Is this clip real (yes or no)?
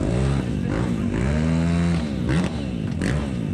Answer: yes